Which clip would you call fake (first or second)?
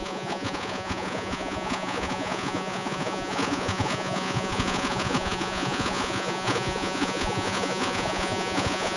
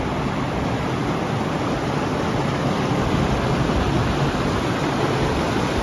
first